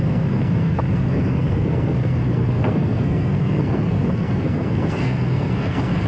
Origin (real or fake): fake